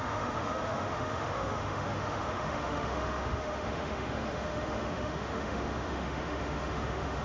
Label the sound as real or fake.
fake